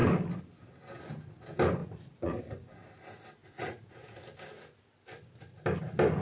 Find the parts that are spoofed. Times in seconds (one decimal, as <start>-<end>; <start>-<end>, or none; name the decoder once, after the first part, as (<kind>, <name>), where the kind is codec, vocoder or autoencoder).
1.8-2.3 (vocoder, Vocos); 3.4-4.2